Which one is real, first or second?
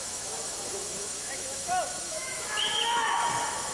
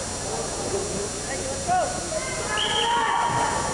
second